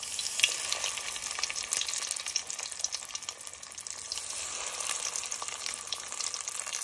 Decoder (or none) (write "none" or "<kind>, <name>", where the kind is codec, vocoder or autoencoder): none